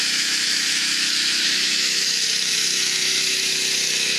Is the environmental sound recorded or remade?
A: remade